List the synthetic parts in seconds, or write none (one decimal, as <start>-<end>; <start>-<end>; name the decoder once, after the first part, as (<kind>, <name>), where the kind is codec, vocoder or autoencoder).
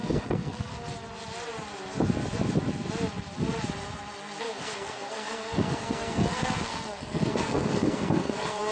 0.0-0.7 (codec, SNAC); 4.4-8.7